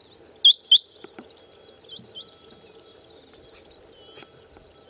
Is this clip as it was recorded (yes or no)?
yes